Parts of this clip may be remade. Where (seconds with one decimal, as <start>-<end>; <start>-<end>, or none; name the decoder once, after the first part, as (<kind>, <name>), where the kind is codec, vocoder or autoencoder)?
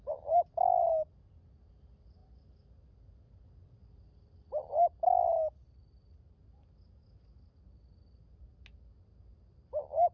none